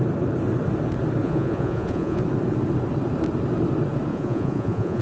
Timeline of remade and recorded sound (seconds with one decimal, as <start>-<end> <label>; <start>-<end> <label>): 0.0-1.2 recorded; 1.2-2.2 remade; 2.2-4.1 recorded; 4.1-5.0 remade